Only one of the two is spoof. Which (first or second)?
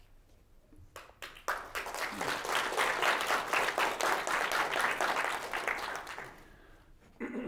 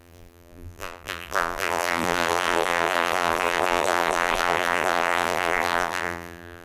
second